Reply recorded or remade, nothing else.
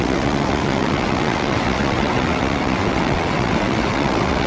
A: remade